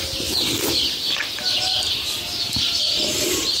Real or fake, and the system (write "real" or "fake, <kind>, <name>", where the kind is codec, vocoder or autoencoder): real